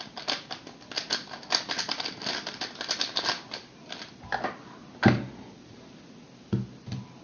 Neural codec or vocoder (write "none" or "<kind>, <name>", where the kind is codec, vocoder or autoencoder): none